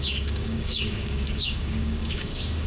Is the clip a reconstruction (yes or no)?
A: yes